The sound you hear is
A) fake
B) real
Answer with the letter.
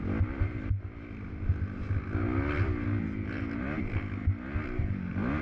B